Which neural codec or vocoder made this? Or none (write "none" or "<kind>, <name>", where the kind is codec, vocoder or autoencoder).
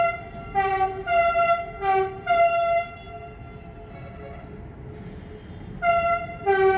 none